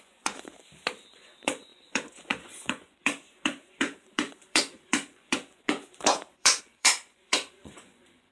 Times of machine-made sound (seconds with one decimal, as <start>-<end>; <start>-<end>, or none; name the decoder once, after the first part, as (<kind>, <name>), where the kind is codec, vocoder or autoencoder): 0.0-0.5 (vocoder, Vocos); 1.1-8.3